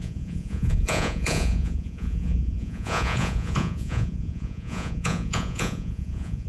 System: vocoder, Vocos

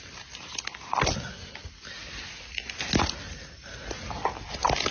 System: none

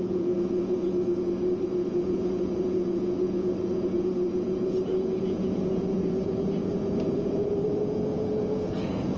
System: vocoder, Vocos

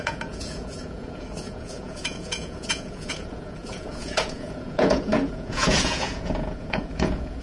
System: vocoder, Vocos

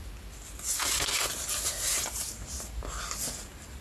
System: none